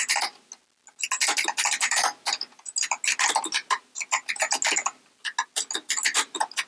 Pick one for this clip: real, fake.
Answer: real